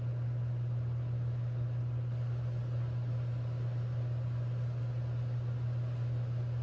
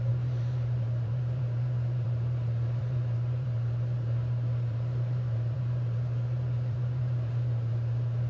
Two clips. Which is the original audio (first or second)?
first